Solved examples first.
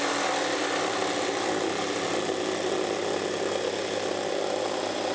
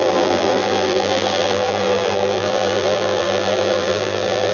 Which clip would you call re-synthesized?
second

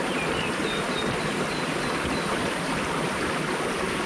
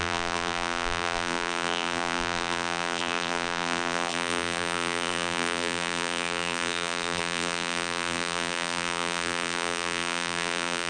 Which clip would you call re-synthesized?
second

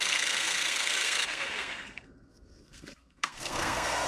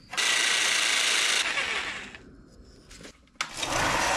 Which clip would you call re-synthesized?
first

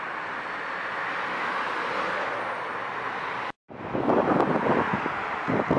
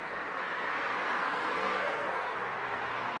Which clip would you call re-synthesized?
second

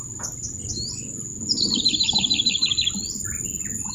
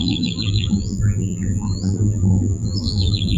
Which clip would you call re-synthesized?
second